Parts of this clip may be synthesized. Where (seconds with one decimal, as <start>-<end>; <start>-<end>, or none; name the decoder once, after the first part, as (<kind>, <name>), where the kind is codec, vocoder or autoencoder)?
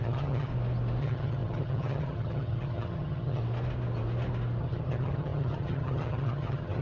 0.0-0.5 (vocoder, HiFi-GAN); 1.0-3.4; 4.6-6.8